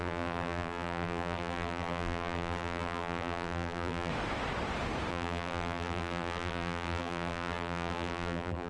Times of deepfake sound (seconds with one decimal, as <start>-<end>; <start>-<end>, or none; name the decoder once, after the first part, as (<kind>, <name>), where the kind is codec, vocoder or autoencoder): 0.0-4.1 (vocoder, BigVGAN v2); 5.1-8.7